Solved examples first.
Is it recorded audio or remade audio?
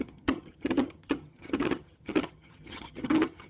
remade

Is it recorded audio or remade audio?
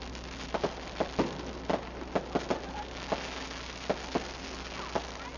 recorded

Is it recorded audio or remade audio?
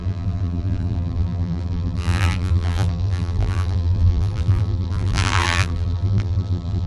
remade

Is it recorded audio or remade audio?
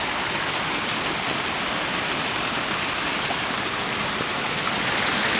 recorded